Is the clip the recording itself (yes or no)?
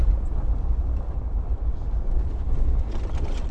yes